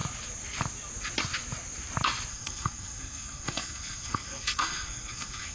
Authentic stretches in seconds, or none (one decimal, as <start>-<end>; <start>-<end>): 0.0-2.3